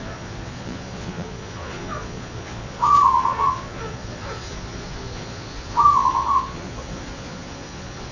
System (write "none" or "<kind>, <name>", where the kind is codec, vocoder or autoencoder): vocoder, Vocos